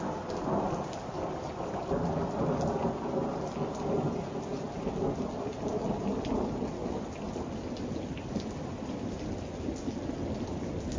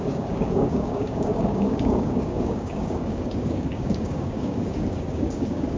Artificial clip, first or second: second